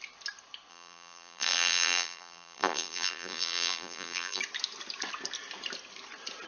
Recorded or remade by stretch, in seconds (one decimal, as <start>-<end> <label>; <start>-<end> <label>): 0.0-0.7 recorded; 0.7-4.4 remade; 4.4-6.5 recorded